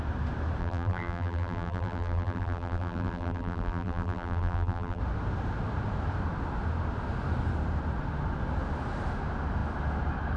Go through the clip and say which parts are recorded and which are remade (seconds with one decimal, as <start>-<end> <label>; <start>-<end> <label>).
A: 0.0-0.6 recorded; 0.6-5.0 remade; 5.0-10.4 recorded

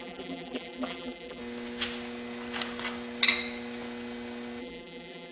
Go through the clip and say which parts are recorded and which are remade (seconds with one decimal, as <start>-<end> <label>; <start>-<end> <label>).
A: 0.0-1.4 remade; 1.4-4.6 recorded; 4.6-5.3 remade

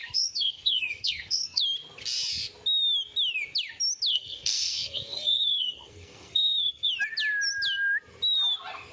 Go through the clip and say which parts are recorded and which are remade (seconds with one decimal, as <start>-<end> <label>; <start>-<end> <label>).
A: 0.0-1.6 remade; 1.6-4.1 recorded; 4.1-6.9 remade; 6.9-8.9 recorded

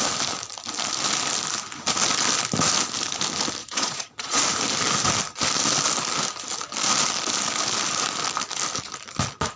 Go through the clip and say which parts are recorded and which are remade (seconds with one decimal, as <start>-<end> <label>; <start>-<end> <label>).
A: 0.0-3.6 recorded; 3.6-4.4 remade; 4.4-9.6 recorded

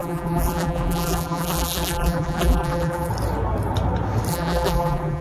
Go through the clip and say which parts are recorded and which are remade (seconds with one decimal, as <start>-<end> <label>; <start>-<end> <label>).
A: 0.0-3.1 remade; 3.1-4.3 recorded; 4.3-5.2 remade